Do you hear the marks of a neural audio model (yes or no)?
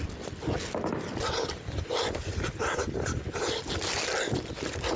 no